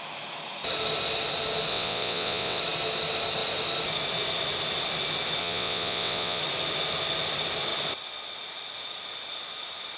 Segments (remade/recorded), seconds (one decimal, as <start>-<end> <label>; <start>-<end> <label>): 0.0-1.7 recorded; 1.7-2.6 remade; 2.6-5.4 recorded; 5.4-6.4 remade; 6.4-10.0 recorded